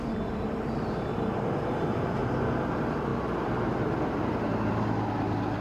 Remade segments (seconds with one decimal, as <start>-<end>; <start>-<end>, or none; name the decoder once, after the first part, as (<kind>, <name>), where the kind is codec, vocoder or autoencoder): 0.0-2.2 (vocoder, BigVGAN v2); 2.7-5.6